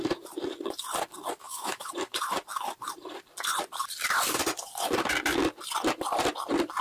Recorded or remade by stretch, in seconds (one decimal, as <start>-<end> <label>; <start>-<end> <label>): 0.0-1.4 recorded; 1.4-1.9 remade; 1.9-6.8 recorded